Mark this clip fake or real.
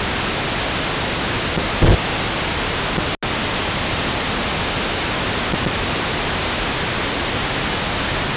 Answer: real